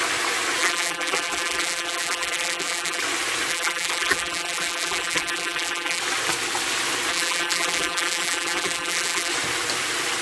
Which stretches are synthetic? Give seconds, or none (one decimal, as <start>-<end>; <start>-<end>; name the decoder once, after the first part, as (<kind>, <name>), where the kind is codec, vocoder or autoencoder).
0.6-3.0 (vocoder, BigVGAN v2); 3.5-6.0; 7.1-9.3

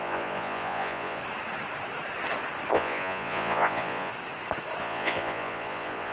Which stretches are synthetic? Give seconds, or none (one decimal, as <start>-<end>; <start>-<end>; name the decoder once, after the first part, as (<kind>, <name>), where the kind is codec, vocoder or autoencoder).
0.0-1.2 (vocoder, Vocos); 2.7-4.1; 4.8-6.1

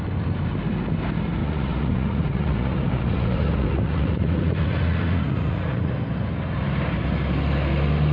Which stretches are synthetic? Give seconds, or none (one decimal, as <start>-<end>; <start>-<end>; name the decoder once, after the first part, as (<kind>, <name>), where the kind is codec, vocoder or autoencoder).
1.4-5.9 (vocoder, Vocos)

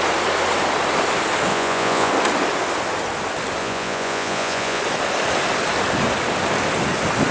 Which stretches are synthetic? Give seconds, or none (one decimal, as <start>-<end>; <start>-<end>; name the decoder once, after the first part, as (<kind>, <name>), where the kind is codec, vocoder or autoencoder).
1.5-2.1 (vocoder, Vocos); 3.6-4.8

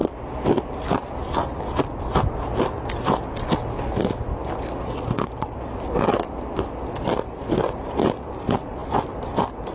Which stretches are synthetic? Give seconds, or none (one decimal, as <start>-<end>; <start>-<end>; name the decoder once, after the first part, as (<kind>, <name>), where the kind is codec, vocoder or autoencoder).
none

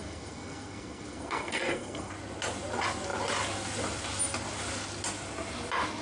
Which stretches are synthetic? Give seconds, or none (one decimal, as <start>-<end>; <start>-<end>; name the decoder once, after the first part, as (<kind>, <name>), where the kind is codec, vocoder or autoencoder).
0.0-2.1 (codec, SNAC)

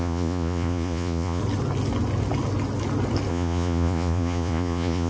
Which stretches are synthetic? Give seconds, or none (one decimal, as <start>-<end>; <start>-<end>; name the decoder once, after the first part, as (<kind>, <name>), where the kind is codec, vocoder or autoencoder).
0.0-1.4 (vocoder, Vocos); 3.3-5.1

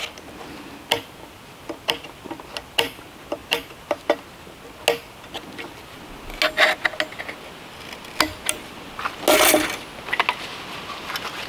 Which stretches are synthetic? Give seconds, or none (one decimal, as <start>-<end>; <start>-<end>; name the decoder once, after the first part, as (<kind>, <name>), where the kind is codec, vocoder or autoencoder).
none